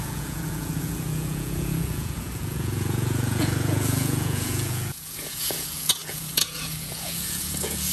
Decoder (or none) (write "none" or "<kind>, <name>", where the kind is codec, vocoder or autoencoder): vocoder, Vocos